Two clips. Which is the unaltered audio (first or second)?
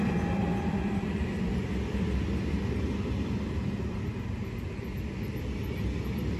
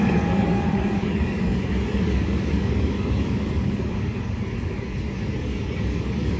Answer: first